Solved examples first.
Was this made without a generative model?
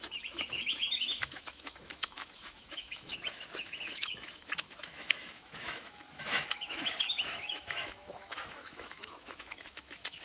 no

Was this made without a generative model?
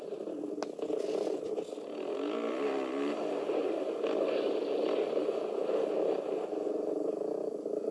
yes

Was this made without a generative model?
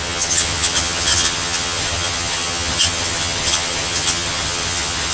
no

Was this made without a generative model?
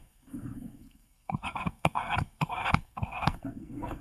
no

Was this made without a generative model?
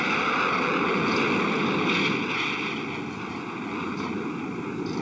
yes